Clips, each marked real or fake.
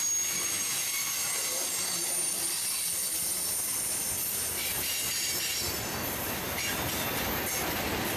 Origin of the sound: real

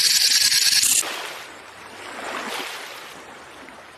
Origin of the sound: real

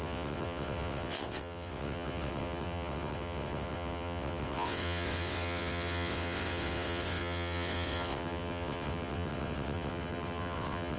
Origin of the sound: fake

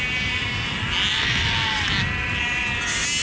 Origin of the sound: real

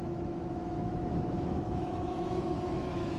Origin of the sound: fake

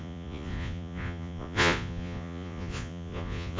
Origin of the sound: fake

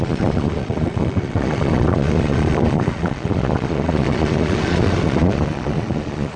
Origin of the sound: fake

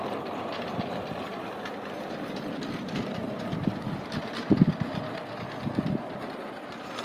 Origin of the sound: real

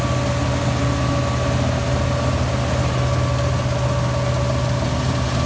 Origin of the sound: real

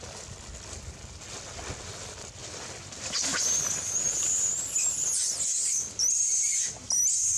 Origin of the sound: real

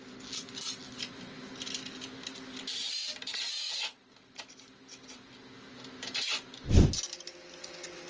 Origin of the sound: real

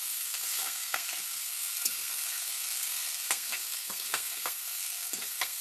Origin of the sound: fake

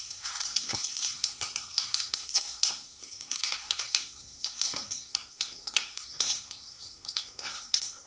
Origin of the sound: fake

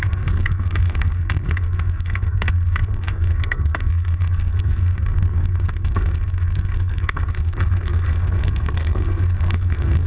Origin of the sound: fake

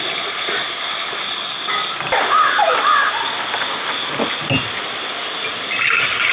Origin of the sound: real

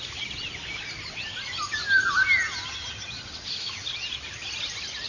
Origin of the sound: real